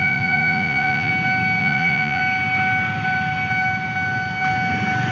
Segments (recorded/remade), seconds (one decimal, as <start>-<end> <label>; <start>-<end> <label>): 0.0-1.1 remade; 1.1-1.6 recorded; 1.6-2.2 remade; 2.2-5.1 recorded